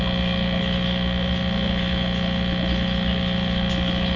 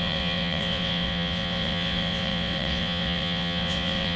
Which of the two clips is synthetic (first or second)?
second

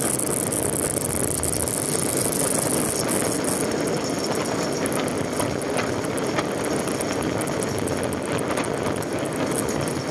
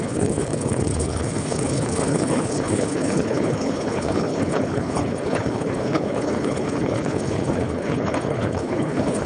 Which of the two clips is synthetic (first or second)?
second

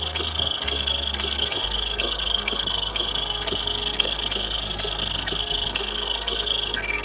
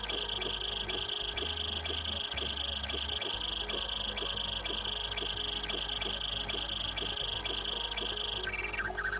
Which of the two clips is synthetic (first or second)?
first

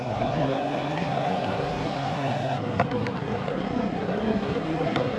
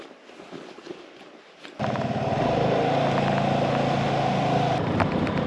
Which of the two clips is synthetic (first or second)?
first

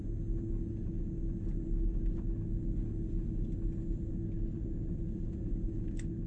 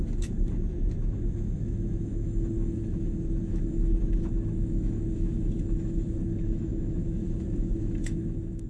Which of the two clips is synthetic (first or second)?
second